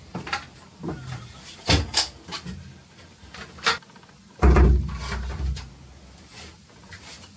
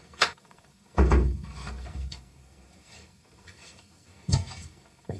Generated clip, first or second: second